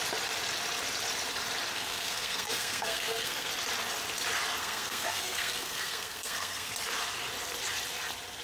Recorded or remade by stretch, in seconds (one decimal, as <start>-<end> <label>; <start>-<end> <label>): 0.0-1.7 recorded; 1.7-3.5 remade; 3.5-4.6 recorded; 4.6-6.7 remade; 6.7-8.4 recorded